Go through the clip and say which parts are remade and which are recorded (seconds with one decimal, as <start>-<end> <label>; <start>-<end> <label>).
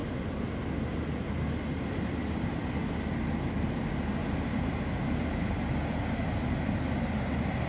0.0-0.6 remade; 0.6-4.2 recorded; 4.2-5.6 remade; 5.6-7.7 recorded